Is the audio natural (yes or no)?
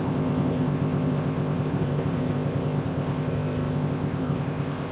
no